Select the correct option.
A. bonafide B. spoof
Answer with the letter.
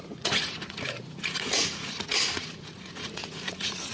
B